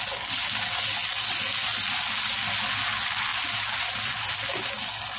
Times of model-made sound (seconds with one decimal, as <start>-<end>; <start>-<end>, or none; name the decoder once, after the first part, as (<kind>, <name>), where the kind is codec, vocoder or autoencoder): none